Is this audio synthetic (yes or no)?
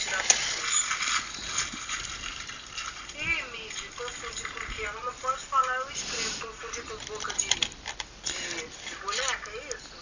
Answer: no